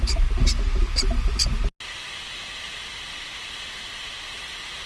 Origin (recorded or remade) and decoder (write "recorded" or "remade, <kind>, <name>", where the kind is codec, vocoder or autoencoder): recorded